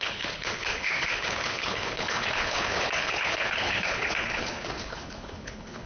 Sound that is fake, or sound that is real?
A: fake